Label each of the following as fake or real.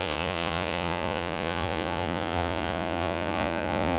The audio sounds fake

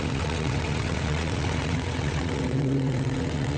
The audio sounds fake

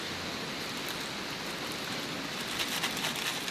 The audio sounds real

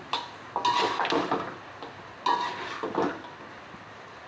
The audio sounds real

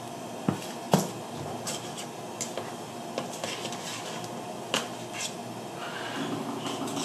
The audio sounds real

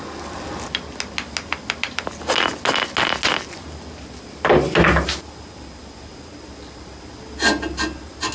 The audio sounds real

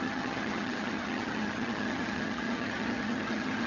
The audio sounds fake